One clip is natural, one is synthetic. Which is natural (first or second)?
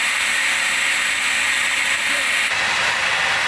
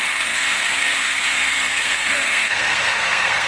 first